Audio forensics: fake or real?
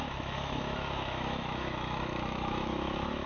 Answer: fake